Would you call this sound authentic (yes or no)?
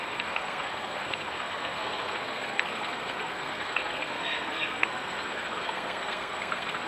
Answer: no